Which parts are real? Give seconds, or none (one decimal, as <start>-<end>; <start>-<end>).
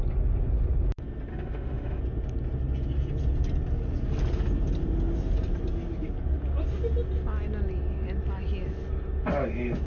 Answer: 0.0-1.3; 2.0-9.9